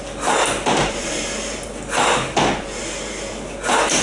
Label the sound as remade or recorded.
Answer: recorded